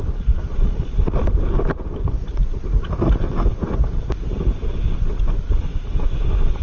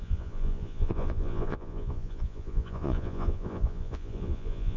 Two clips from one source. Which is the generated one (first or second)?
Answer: second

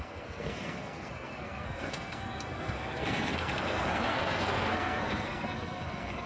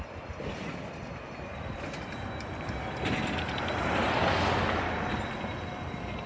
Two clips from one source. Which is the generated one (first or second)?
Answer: first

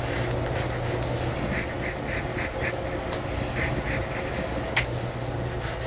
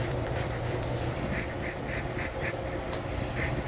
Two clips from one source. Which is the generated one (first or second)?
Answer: second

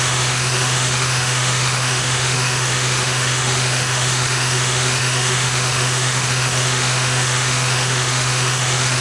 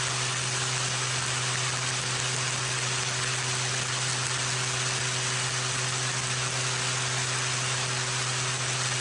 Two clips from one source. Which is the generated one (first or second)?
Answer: first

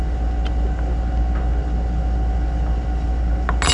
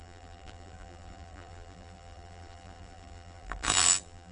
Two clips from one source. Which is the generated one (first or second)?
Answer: second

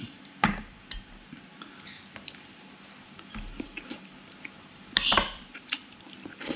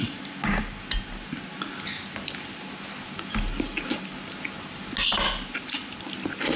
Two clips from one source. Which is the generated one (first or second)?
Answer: first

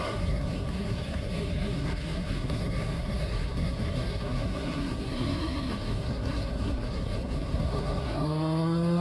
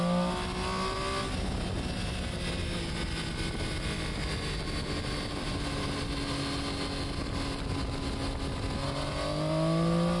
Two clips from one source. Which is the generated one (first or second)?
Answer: first